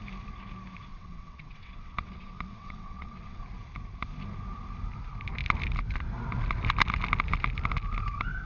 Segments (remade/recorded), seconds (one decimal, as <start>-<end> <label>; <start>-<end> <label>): 0.0-0.9 recorded; 0.9-3.4 remade; 3.4-8.5 recorded